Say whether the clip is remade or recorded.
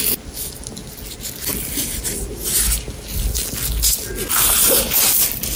recorded